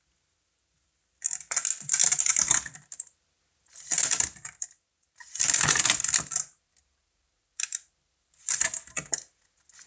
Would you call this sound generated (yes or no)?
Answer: no